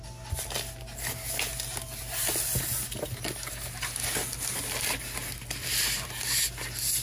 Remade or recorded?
recorded